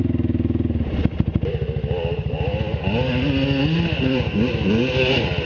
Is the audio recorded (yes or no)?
yes